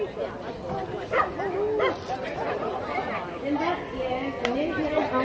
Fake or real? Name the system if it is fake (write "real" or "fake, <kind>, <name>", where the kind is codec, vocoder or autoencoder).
real